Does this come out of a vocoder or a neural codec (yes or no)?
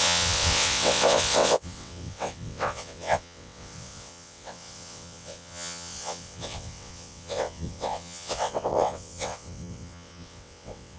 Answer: yes